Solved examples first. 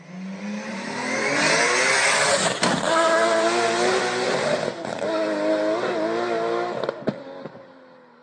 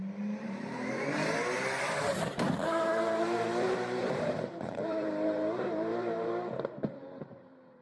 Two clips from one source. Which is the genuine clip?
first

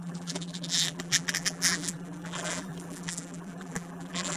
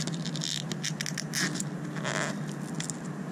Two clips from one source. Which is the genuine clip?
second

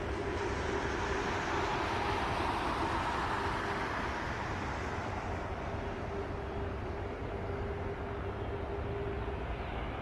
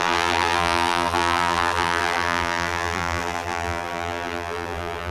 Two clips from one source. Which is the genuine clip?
first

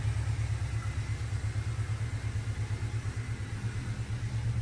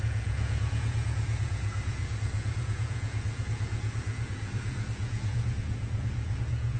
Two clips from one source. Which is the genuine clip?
first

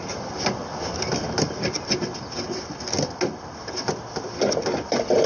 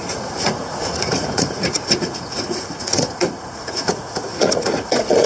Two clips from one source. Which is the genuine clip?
first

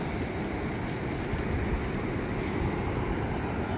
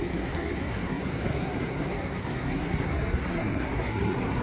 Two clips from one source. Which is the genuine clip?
first